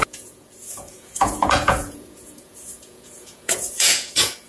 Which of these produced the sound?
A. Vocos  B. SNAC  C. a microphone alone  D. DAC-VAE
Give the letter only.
A